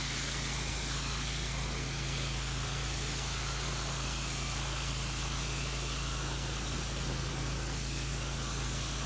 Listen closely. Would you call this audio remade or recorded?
remade